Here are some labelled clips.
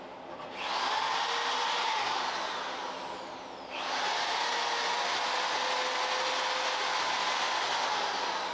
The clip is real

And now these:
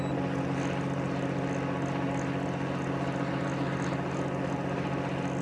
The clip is real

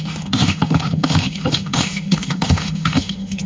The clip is fake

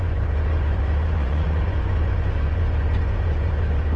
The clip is fake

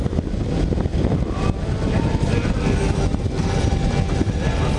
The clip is real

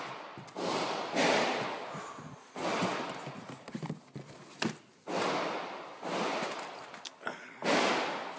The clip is real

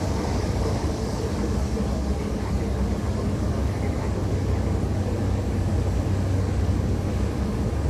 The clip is fake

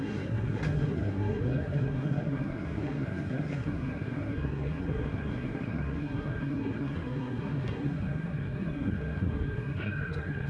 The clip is fake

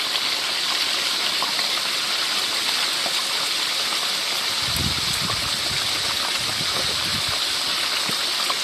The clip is real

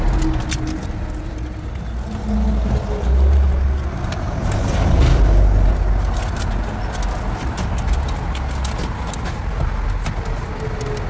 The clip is real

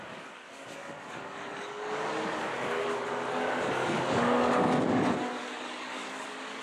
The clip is fake